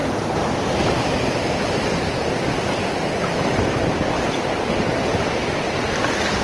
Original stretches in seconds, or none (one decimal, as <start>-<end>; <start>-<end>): 0.0-6.4

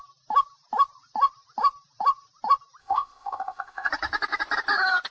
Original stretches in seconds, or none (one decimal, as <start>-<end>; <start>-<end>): 0.0-2.8; 3.9-5.1

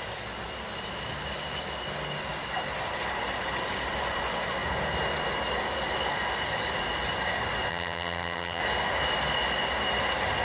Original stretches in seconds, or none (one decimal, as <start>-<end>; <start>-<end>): 0.0-7.7; 8.6-10.4

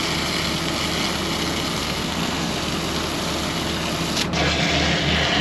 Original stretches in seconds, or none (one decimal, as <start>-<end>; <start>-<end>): 0.0-1.8; 2.5-5.4

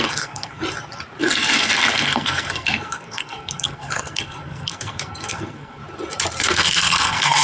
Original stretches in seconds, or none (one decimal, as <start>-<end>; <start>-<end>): 0.6-1.2; 5.8-6.4

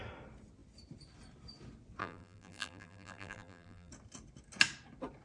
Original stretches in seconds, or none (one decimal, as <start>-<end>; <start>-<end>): 0.0-2.0; 3.9-5.2

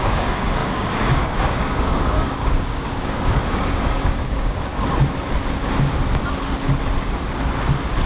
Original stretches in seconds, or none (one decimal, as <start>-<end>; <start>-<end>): 4.7-8.1

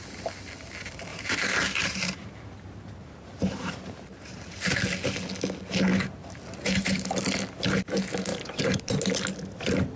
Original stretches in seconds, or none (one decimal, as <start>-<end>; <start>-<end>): 0.0-1.1; 2.3-3.0; 4.7-8.3; 9.0-10.0